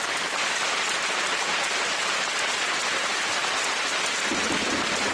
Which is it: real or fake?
real